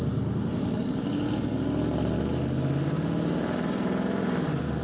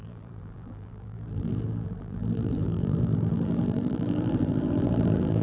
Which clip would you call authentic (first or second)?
first